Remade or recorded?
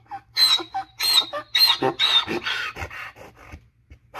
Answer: recorded